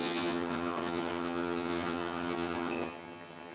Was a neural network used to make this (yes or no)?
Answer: yes